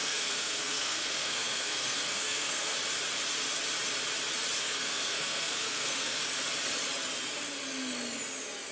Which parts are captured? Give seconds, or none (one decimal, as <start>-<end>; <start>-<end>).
2.7-4.6; 6.2-8.7